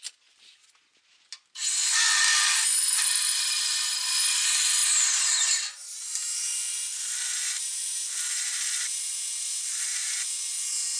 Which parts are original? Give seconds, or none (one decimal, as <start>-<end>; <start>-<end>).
0.0-11.0